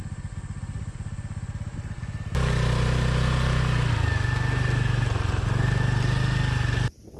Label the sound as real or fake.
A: real